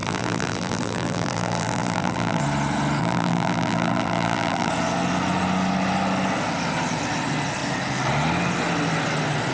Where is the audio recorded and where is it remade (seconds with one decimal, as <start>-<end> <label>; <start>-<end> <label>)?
0.0-2.4 remade; 2.4-3.0 recorded; 3.0-4.7 remade; 4.7-9.5 recorded